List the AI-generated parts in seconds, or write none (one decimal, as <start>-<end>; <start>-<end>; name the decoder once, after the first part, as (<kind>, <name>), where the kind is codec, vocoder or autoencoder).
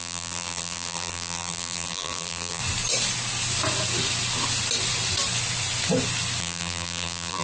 0.0-2.6 (vocoder, BigVGAN v2); 6.4-7.4